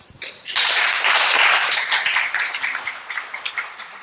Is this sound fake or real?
fake